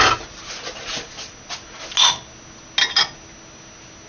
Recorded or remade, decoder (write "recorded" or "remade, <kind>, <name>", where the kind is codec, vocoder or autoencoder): recorded